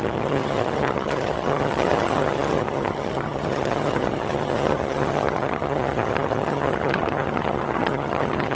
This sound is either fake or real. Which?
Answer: fake